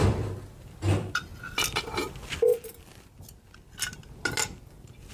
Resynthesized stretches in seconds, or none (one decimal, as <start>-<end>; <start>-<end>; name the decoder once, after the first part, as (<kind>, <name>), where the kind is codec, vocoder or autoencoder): 0.0-1.3 (vocoder, BigVGAN v2); 1.8-2.5